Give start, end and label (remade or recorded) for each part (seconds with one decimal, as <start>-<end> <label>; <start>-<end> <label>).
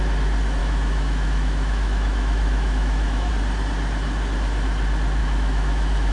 0.0-0.6 recorded; 0.6-3.3 remade; 3.3-5.2 recorded; 5.2-6.1 remade